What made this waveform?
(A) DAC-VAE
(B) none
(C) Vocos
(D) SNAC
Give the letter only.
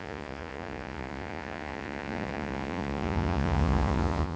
C